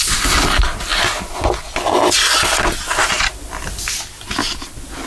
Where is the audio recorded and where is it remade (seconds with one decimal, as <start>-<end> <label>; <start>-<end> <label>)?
0.0-5.1 recorded

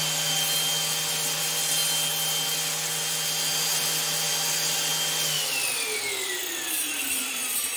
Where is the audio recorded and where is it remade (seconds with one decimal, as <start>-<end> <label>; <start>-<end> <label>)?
0.0-7.8 recorded

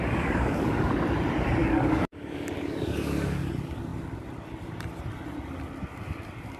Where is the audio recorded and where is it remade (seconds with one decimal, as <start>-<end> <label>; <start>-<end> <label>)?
0.0-0.9 remade; 0.9-1.6 recorded; 1.6-3.5 remade; 3.5-6.6 recorded

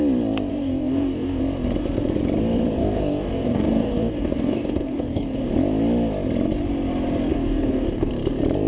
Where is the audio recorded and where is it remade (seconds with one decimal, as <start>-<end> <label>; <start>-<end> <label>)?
0.0-0.5 recorded; 0.5-1.4 remade; 1.4-2.8 recorded; 2.8-5.5 remade; 5.5-7.3 recorded; 7.3-8.1 remade; 8.1-8.7 recorded